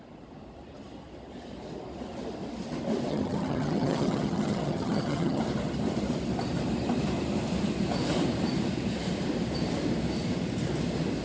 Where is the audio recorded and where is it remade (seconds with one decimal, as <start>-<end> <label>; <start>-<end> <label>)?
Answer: 0.0-3.1 recorded; 3.1-5.4 remade; 5.4-11.2 recorded